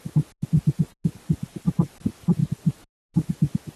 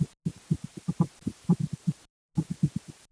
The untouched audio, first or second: first